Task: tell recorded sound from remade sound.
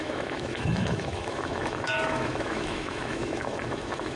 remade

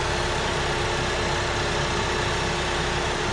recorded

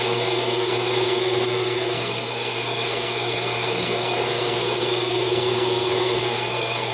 remade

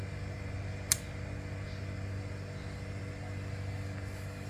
recorded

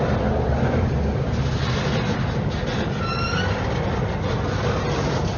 recorded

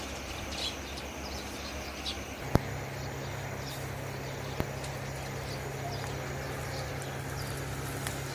remade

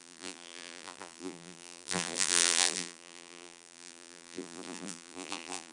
remade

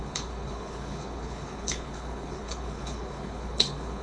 remade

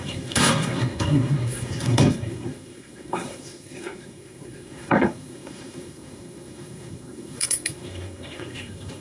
remade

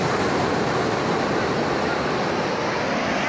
recorded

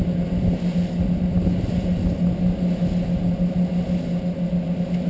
recorded